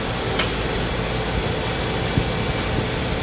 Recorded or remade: recorded